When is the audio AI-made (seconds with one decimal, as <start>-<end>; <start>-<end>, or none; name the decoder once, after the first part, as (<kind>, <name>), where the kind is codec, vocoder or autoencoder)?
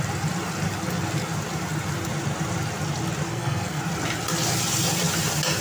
3.3-3.8 (codec, SNAC)